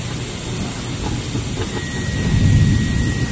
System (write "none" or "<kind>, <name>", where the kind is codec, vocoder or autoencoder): none